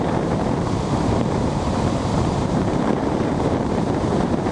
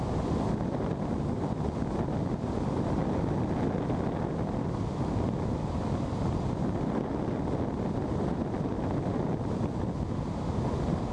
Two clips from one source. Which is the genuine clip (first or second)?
second